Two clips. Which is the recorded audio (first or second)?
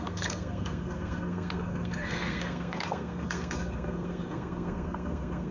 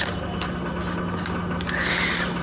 second